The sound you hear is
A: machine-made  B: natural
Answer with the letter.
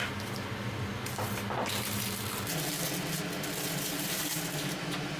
B